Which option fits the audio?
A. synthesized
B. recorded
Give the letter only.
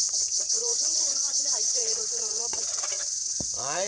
A